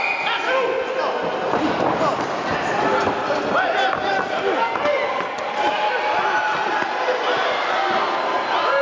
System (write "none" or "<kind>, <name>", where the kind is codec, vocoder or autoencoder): none